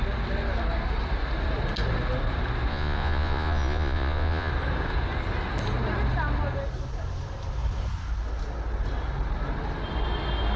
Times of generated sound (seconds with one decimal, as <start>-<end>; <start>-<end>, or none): 2.7-4.5